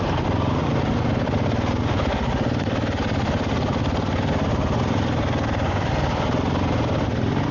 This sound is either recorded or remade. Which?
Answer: recorded